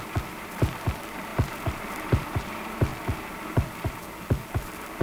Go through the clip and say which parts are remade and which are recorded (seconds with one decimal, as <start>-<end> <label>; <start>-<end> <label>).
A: 0.0-2.9 remade; 2.9-4.5 recorded; 4.5-5.0 remade

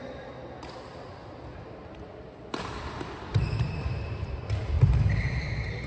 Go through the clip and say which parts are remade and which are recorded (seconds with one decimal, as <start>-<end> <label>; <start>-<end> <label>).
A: 0.0-5.9 recorded

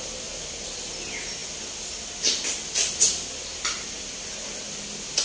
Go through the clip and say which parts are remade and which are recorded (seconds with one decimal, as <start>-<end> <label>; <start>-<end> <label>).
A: 0.0-5.2 recorded

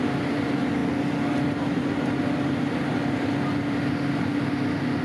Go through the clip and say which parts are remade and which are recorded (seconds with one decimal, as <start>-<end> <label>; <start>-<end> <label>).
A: 0.0-5.0 recorded

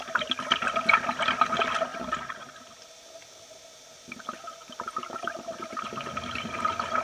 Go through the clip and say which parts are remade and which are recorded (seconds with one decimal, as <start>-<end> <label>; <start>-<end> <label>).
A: 0.0-7.0 recorded

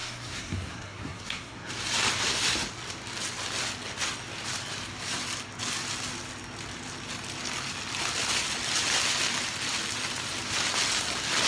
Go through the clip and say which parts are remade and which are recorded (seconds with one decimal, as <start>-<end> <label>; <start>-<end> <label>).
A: 0.0-1.7 remade; 1.7-11.5 recorded

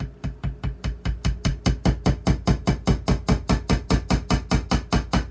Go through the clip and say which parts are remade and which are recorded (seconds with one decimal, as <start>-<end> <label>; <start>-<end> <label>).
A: 0.0-5.3 recorded